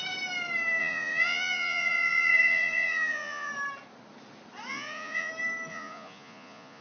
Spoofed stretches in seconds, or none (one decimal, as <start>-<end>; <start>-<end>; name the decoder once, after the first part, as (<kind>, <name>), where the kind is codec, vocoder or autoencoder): 0.8-3.5 (vocoder, Vocos); 4.7-5.3; 5.7-6.8